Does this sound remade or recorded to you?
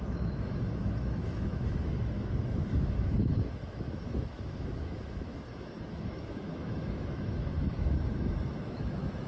remade